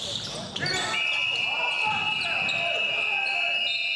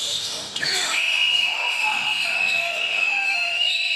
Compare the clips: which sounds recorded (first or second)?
first